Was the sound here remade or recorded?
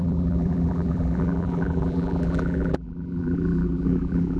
remade